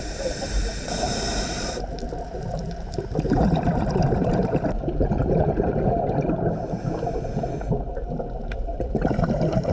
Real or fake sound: fake